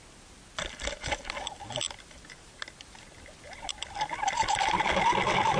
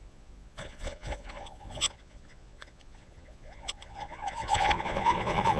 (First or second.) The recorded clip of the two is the first